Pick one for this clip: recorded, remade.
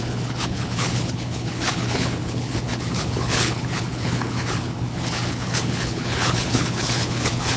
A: remade